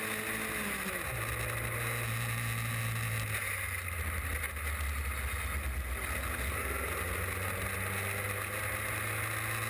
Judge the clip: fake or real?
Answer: real